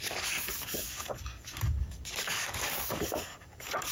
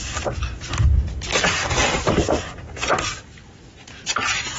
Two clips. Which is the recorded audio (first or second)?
second